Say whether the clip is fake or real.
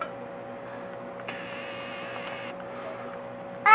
real